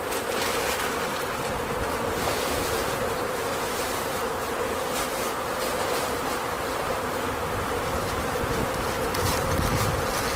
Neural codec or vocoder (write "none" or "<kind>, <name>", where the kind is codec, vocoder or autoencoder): none